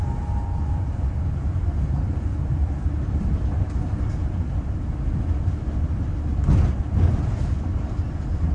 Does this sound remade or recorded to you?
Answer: recorded